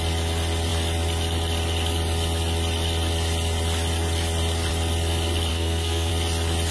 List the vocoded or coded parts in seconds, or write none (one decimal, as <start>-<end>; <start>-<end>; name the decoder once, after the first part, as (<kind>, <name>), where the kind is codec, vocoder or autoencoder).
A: 5.5-6.1 (codec, SNAC)